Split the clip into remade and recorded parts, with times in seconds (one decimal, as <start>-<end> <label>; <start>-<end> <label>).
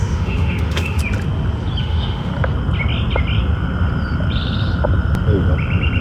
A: 0.0-1.0 remade; 1.0-1.8 recorded; 1.8-2.3 remade; 2.3-6.0 recorded